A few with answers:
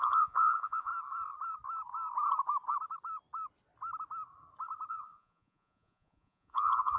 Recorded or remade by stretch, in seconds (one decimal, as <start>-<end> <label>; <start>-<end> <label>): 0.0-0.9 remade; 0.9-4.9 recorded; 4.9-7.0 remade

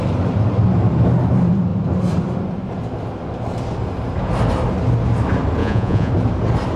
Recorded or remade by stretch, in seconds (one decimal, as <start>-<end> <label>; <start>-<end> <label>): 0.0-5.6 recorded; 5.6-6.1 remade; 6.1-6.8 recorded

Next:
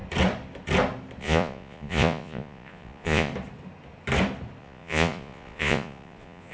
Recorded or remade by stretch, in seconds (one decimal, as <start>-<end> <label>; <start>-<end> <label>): 0.0-1.2 recorded; 1.2-3.3 remade; 3.3-4.6 recorded; 4.6-6.5 remade